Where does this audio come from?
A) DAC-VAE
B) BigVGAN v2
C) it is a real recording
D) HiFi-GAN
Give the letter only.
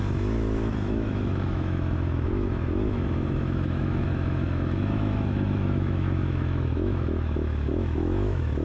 A